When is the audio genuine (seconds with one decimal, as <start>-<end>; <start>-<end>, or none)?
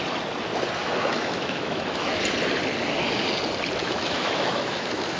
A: 0.0-0.8; 2.2-3.8